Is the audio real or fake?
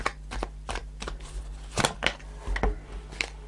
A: real